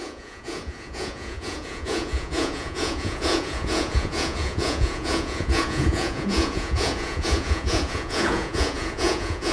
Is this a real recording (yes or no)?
no